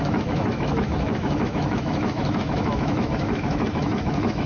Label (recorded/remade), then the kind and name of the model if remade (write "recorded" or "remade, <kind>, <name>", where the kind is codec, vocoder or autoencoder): remade, autoencoder, DAC-VAE